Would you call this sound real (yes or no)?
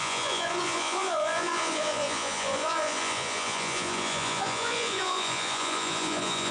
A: no